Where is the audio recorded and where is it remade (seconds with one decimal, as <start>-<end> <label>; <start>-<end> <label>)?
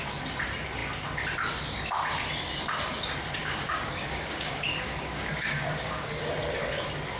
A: 0.0-3.4 recorded; 3.4-6.1 remade; 6.1-7.2 recorded